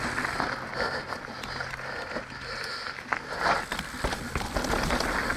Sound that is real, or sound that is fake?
real